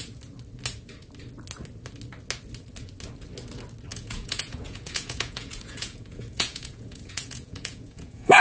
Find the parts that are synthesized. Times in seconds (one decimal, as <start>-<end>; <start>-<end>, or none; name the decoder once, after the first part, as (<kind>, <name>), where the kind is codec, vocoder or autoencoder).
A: 3.9-8.4 (vocoder, Vocos)